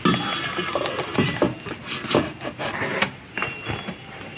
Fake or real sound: real